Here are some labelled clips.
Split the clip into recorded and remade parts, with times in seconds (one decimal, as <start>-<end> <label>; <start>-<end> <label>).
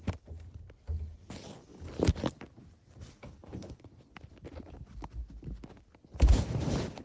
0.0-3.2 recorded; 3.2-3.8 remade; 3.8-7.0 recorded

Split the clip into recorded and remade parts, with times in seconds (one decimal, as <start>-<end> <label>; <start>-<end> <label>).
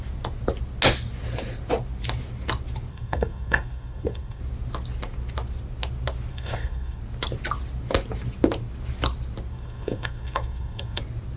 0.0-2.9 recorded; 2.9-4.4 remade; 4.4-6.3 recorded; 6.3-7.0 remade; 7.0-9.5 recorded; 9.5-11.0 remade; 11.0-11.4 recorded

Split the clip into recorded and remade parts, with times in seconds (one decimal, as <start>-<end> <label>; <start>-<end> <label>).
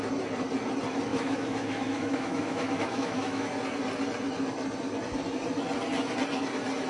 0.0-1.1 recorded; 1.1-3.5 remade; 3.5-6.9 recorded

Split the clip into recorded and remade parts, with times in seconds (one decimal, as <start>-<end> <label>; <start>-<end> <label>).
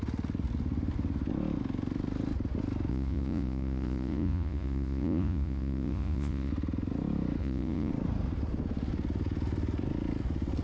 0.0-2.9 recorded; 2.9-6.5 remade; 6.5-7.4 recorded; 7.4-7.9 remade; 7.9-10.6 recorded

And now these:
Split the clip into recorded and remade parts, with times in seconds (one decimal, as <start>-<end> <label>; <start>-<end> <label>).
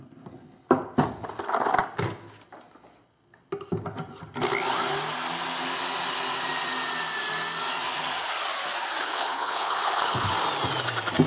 0.0-9.0 recorded; 9.0-10.3 remade; 10.3-11.3 recorded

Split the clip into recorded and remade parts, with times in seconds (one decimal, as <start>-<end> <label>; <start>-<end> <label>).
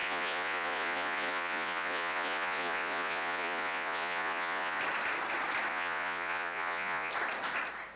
0.0-4.8 remade; 4.8-5.7 recorded; 5.7-7.1 remade; 7.1-8.0 recorded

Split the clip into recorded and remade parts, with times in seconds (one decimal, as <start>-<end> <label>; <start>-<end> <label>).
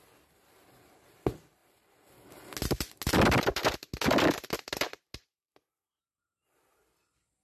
0.0-7.4 recorded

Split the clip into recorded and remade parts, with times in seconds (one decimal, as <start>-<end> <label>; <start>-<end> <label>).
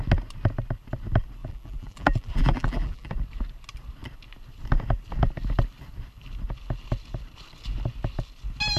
0.0-1.4 recorded; 1.4-3.1 remade; 3.1-8.8 recorded